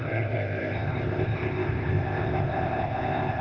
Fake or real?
fake